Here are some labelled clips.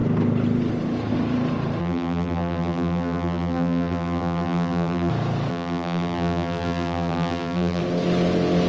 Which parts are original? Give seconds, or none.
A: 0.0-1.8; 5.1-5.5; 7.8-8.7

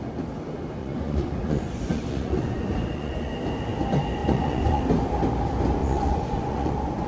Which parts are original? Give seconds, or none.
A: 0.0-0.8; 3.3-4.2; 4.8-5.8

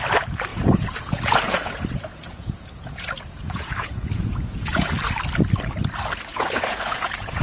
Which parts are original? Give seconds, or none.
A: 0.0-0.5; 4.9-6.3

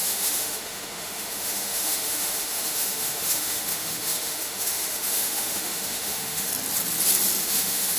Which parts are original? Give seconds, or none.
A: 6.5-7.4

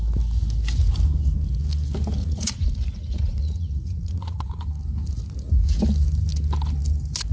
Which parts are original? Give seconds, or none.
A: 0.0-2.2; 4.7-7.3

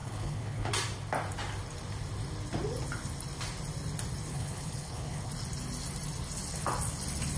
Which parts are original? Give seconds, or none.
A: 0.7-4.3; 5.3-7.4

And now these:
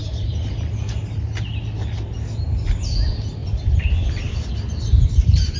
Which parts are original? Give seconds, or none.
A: 0.5-3.4

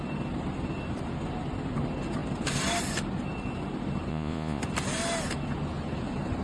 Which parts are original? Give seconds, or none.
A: 0.0-4.1; 4.6-6.4